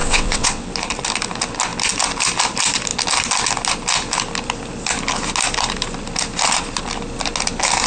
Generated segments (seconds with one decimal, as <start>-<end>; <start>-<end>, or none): 0.0-0.7